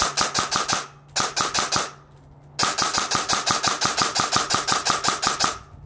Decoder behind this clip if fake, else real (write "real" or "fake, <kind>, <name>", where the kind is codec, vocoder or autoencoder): real